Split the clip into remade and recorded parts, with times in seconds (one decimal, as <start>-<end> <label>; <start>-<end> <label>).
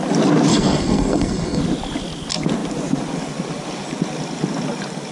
0.0-0.5 recorded; 0.5-1.6 remade; 1.6-5.1 recorded